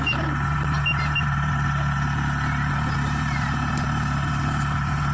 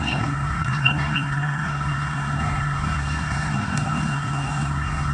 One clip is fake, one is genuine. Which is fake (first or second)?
second